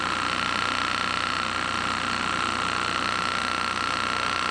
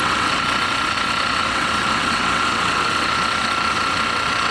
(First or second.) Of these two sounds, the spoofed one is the second